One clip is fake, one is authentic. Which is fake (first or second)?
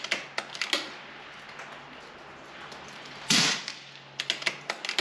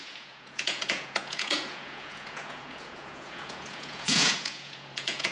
second